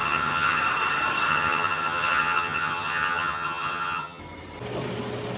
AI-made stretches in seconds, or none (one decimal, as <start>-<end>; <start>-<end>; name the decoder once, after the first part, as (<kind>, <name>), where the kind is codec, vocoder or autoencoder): 0.0-0.6 (vocoder, HiFi-GAN); 1.3-4.2